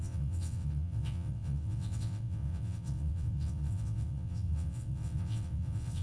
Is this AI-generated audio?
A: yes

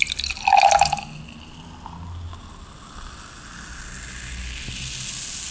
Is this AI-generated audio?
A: no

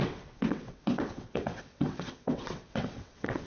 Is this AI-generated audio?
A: yes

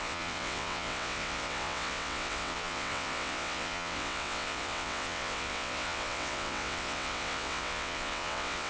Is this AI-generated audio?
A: yes